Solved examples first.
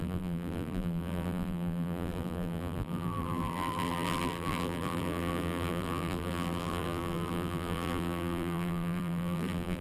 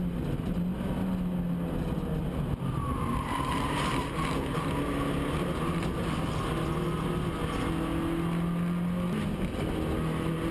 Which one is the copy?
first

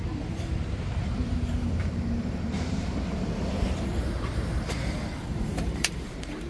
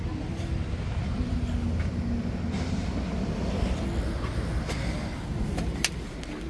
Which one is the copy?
first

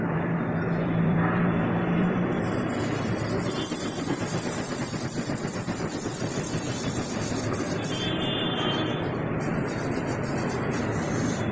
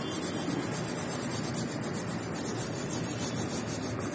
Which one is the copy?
first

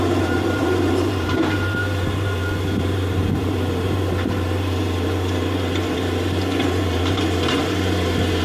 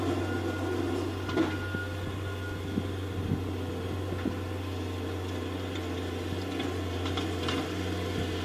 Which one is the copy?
first